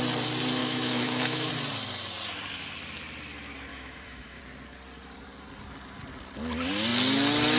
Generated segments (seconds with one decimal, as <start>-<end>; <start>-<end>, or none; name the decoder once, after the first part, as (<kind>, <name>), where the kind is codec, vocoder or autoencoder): 0.6-1.5 (autoencoder, DAC-VAE); 3.7-4.4